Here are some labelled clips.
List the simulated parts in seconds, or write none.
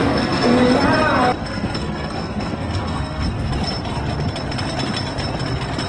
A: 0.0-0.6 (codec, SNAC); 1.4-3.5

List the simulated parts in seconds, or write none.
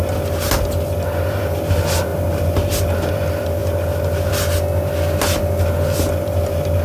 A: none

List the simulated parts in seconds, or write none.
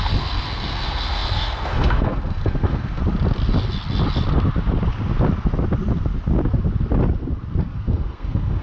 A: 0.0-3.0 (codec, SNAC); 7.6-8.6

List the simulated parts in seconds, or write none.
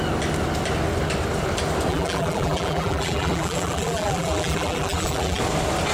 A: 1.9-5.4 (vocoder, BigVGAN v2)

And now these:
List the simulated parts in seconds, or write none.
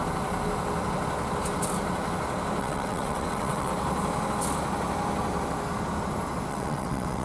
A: 2.6-3.7 (vocoder, WaveNeXt); 6.5-7.2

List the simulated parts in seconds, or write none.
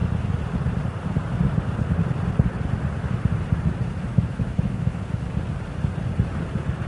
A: 4.1-5.0 (autoencoder, DAC-VAE)